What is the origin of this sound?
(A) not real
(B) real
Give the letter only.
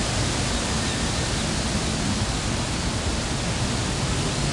B